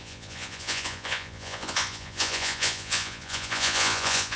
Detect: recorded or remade remade